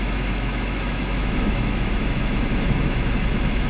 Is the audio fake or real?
fake